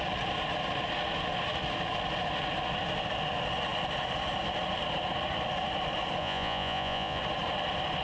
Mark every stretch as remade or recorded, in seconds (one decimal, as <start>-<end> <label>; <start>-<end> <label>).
0.0-6.2 recorded; 6.2-7.2 remade; 7.2-8.0 recorded

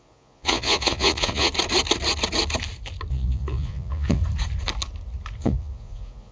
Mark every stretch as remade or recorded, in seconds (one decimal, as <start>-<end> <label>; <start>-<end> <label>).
0.0-1.5 remade; 1.5-3.1 recorded; 3.1-4.2 remade; 4.2-5.4 recorded; 5.4-6.3 remade